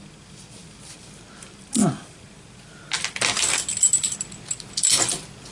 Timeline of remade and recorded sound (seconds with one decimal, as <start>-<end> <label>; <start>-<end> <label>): 0.0-5.5 recorded